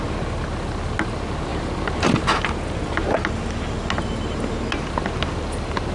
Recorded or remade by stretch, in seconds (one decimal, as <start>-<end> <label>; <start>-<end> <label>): 0.0-5.9 recorded